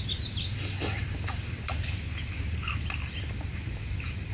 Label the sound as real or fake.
real